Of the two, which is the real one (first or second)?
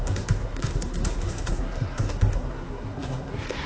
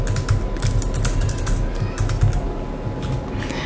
second